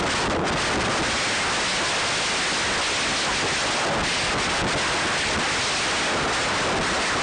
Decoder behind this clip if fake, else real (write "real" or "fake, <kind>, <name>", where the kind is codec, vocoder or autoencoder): real